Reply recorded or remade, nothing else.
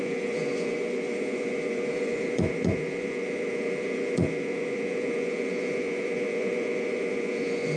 remade